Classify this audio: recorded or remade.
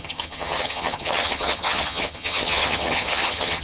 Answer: remade